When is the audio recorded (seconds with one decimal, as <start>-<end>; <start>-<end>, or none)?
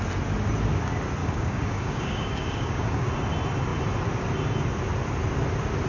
0.0-1.2; 3.1-5.9